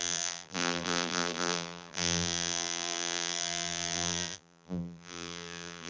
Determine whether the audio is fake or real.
fake